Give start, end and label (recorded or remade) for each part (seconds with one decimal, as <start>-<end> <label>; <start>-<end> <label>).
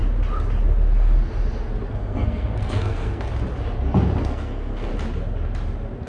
0.0-1.9 recorded; 1.9-3.3 remade; 3.3-4.2 recorded; 4.2-4.9 remade; 4.9-6.1 recorded